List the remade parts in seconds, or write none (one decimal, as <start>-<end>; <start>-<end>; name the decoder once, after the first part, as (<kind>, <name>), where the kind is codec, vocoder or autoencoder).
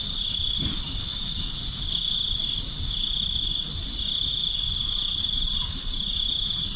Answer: 0.0-1.1 (vocoder, BigVGAN v2); 5.2-6.8